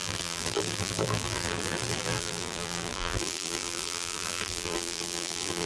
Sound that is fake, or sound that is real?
fake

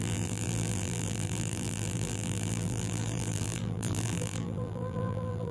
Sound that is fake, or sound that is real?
fake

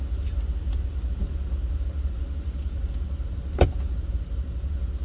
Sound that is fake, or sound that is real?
real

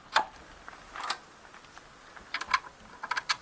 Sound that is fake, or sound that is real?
real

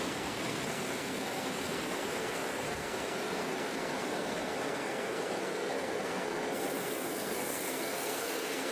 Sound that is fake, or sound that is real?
fake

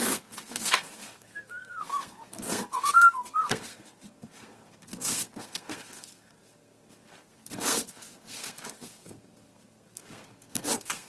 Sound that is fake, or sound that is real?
fake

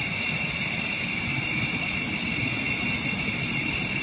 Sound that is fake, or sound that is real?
real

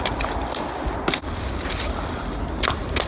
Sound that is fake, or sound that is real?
real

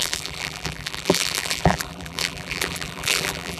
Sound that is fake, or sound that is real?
fake